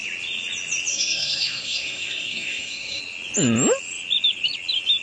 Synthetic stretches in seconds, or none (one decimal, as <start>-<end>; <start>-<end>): 0.9-3.0